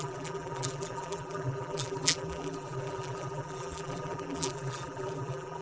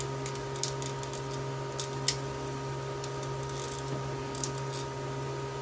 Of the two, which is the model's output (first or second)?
first